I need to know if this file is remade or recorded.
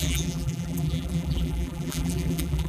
remade